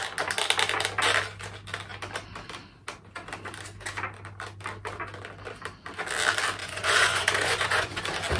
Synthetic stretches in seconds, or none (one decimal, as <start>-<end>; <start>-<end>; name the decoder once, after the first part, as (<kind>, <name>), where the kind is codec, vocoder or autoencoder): 6.6-8.0 (vocoder, Vocos)